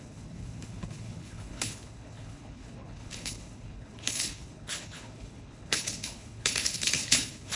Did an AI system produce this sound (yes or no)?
yes